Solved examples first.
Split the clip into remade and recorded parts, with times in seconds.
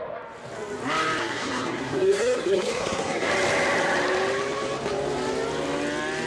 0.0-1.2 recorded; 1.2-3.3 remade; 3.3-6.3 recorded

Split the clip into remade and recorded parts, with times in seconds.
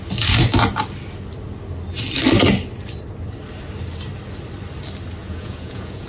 0.0-5.2 recorded; 5.2-6.1 remade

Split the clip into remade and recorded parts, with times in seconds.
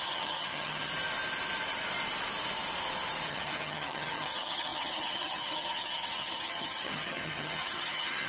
0.0-0.9 remade; 0.9-3.3 recorded; 3.3-8.3 remade